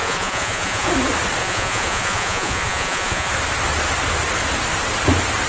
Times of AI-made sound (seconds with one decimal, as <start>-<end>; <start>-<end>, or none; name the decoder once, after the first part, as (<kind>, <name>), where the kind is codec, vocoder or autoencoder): 0.0-0.9 (vocoder, Vocos); 1.4-3.3